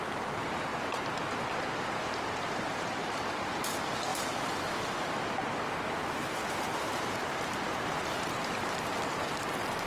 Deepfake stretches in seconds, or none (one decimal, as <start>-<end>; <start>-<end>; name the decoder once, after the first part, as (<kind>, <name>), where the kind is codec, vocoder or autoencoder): 0.0-0.7 (vocoder, BigVGAN v2); 1.2-4.1; 6.1-9.9